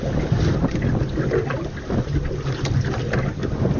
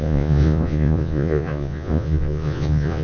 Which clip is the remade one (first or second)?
second